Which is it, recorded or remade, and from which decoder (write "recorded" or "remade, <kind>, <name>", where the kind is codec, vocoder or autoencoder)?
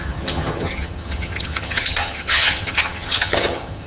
remade, vocoder, HiFi-GAN